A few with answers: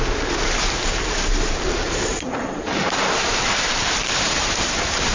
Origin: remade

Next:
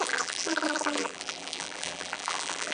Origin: remade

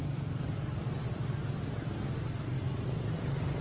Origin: recorded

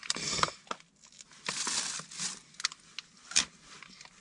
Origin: recorded